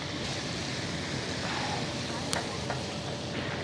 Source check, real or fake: real